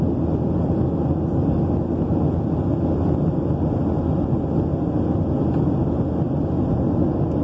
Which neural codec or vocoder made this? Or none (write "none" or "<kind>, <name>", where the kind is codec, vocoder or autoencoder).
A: none